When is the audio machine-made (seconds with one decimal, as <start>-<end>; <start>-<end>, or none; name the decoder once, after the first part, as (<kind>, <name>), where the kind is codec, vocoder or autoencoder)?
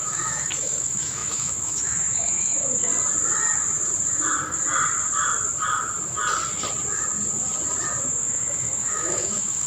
0.0-2.9 (autoencoder, DAC-VAE); 8.0-9.7